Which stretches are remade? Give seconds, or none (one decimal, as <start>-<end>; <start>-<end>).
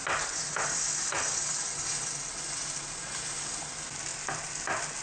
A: none